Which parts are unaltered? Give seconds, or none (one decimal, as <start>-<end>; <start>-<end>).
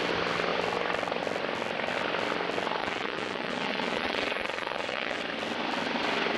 0.0-2.8; 5.2-6.4